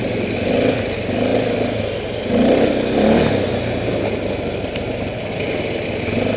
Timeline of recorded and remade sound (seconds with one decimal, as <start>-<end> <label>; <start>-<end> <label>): 0.0-6.4 recorded